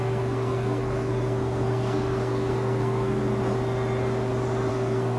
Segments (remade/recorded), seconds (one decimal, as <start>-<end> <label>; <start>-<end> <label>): 0.0-3.2 remade; 3.2-4.7 recorded; 4.7-5.2 remade